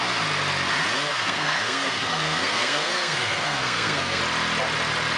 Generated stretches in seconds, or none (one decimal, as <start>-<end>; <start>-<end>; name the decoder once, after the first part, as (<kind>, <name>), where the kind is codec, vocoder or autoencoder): 1.1-4.2 (codec, SNAC)